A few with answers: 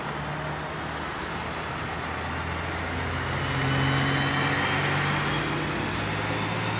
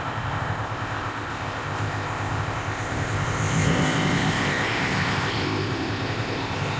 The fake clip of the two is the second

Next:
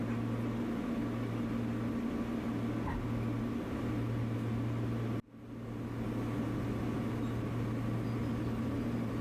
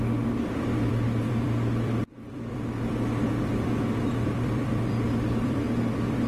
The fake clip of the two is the second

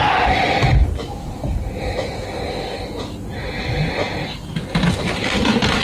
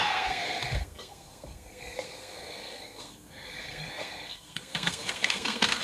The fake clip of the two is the second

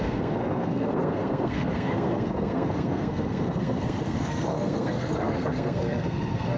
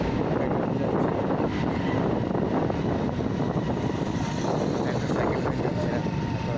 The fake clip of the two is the first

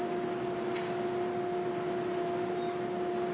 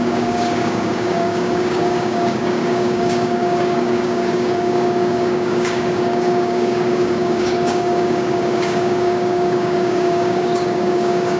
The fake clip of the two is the second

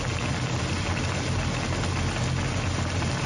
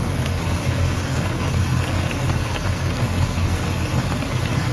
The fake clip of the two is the second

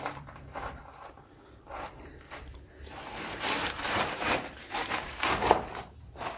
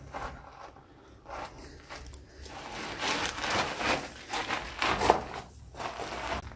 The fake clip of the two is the first